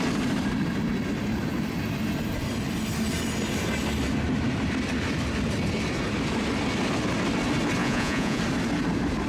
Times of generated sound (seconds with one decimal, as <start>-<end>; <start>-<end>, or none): 7.8-8.4